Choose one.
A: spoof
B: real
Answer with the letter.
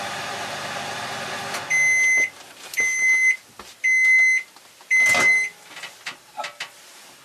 B